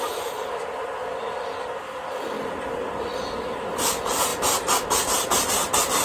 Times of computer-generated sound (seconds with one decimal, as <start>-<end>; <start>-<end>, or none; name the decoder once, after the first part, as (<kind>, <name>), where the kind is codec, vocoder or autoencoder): 0.0-1.0 (vocoder, BigVGAN v2); 2.7-6.0